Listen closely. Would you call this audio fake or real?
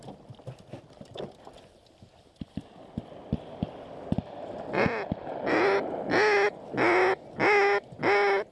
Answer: real